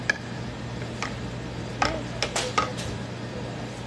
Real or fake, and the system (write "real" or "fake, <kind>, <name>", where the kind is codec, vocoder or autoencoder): real